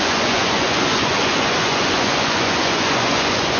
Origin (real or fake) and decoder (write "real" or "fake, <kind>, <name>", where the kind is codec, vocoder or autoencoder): fake, vocoder, Vocos